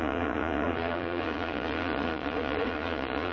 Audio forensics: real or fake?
fake